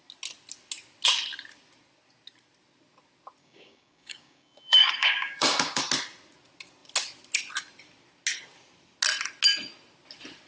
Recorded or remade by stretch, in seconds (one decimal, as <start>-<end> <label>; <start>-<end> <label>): 0.0-3.4 recorded; 3.4-5.8 remade; 5.8-10.5 recorded